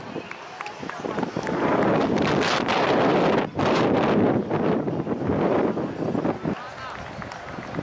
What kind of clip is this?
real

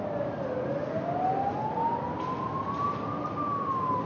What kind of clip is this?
real